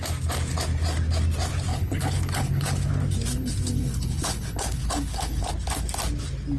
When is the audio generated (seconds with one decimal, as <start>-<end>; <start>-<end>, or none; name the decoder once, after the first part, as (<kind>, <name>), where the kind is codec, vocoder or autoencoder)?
1.7-2.9 (codec, HILCodec); 3.3-5.5

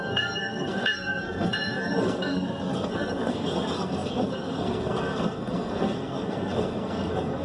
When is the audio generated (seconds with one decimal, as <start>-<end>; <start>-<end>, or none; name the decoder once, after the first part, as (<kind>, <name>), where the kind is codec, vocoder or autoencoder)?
0.0-7.4 (codec, SNAC)

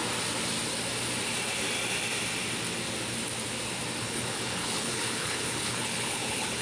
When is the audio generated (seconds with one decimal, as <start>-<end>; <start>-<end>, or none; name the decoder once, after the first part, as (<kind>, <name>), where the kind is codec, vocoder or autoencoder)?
4.0-6.6 (codec, HILCodec)

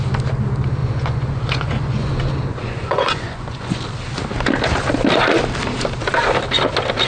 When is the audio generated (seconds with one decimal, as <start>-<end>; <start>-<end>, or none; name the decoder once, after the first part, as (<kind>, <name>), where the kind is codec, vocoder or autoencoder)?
0.8-2.1 (vocoder, Vocos); 2.5-3.8

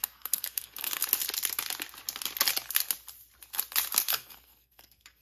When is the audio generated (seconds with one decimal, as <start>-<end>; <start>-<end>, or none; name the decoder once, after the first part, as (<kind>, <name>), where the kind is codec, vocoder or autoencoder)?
0.0-1.0 (codec, SNAC); 4.1-5.2

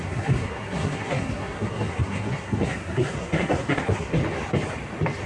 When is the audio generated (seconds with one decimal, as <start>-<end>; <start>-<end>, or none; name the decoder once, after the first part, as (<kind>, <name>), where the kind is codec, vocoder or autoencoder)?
0.0-4.2 (codec, SNAC)